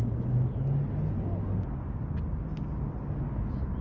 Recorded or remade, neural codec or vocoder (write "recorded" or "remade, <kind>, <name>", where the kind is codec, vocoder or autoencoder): recorded